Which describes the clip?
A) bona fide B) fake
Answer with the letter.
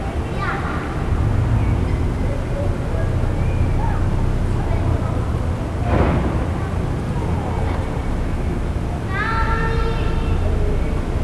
A